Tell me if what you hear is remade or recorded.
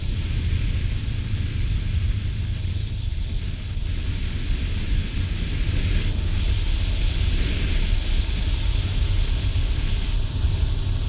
recorded